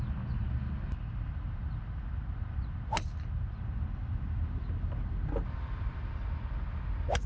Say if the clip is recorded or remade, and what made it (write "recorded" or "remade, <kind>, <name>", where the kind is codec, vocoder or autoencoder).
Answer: recorded